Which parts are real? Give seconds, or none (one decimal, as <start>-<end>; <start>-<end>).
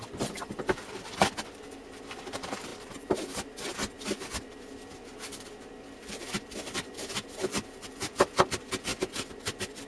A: 2.7-5.6; 8.9-9.9